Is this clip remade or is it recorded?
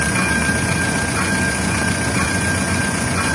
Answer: remade